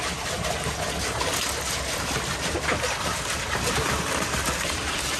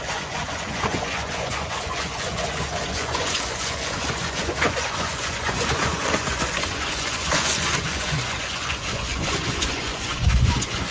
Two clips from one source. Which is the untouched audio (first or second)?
first